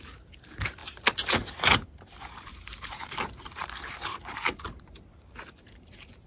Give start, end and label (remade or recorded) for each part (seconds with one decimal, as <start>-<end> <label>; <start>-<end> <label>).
0.0-6.3 remade